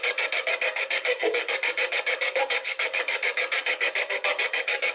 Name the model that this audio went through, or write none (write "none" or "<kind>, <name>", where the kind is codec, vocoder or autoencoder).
codec, DAC